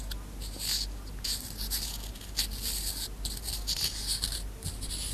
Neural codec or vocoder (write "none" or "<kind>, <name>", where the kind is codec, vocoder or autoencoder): none